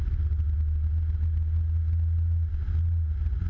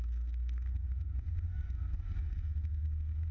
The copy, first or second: second